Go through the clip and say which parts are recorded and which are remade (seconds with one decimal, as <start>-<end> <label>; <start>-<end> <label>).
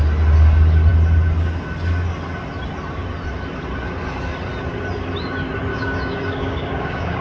0.0-5.7 recorded; 5.7-7.2 remade